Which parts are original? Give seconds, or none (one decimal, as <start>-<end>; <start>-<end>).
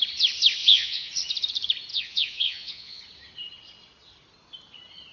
0.0-0.6; 1.1-1.9; 3.0-5.1